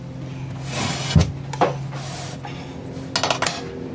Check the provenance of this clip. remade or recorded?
recorded